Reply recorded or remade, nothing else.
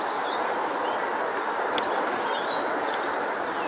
recorded